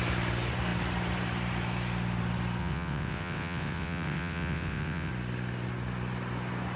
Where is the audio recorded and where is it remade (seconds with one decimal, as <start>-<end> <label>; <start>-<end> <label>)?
0.0-2.6 recorded; 2.6-5.1 remade; 5.1-6.8 recorded